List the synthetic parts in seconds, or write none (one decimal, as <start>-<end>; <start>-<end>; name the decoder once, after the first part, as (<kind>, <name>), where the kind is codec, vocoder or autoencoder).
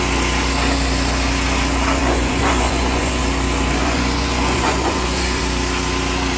2.0-3.2 (vocoder, Vocos); 3.8-5.4